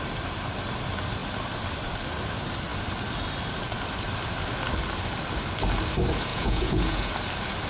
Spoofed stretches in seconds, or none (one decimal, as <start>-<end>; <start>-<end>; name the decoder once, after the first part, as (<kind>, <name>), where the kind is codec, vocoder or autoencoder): 6.3-7.1 (vocoder, Vocos)